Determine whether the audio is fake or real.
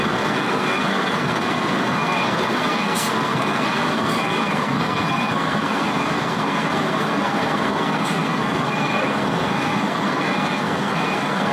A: fake